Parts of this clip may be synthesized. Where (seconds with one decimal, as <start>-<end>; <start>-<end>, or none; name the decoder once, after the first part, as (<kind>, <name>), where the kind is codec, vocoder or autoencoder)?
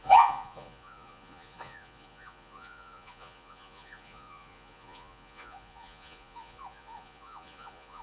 0.0-8.0 (vocoder, Vocos)